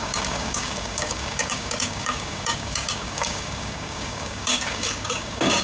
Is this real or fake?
fake